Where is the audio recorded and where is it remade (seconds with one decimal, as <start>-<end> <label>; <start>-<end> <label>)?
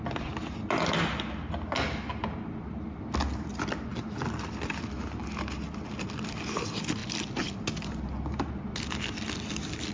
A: 0.0-9.9 recorded